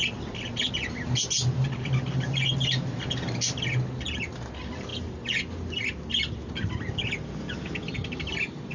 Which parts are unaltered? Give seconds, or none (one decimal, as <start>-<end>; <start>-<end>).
0.0-8.7